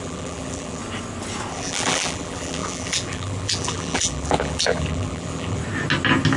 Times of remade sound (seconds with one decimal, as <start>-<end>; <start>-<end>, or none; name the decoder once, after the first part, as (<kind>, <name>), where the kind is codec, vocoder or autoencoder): 0.0-0.8 (vocoder, BigVGAN v2); 1.5-5.6